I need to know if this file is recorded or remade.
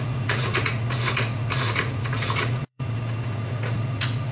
remade